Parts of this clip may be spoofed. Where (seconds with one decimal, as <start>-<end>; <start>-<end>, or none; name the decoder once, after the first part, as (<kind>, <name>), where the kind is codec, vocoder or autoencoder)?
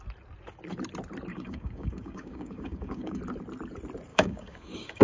1.3-3.2 (codec, DAC); 4.1-5.0